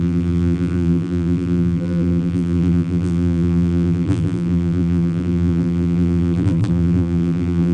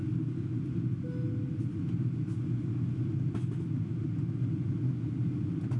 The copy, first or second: first